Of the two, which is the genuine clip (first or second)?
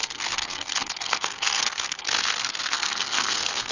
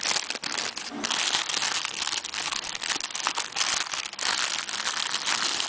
second